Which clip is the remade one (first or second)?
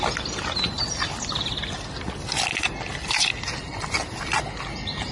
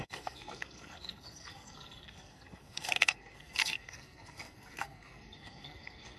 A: second